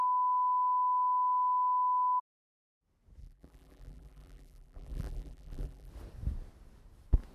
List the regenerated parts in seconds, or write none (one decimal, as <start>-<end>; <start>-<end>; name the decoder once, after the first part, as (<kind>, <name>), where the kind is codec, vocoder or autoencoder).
3.2-5.9 (vocoder, BigVGAN v2)